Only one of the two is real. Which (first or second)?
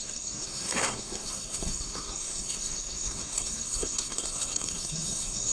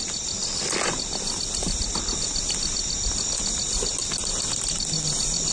second